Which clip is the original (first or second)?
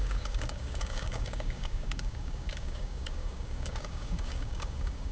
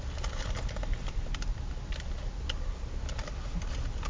second